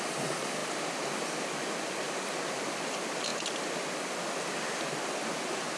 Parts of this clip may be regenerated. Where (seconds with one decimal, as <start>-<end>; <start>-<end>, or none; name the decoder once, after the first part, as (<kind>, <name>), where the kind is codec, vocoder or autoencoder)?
none